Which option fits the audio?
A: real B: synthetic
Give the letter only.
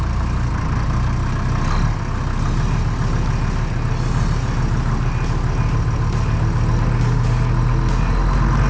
A